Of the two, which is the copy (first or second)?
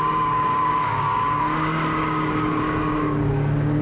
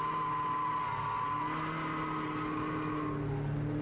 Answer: first